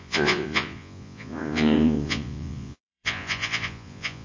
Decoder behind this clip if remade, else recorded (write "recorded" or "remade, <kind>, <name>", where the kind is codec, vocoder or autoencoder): remade, vocoder, Vocos